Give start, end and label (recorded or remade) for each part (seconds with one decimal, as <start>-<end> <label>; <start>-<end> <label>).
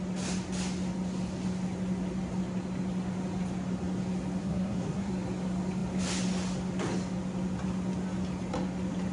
0.0-4.4 recorded; 4.4-5.1 remade; 5.1-9.1 recorded